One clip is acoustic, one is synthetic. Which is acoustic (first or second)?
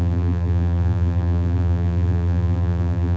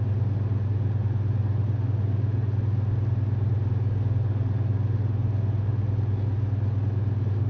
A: second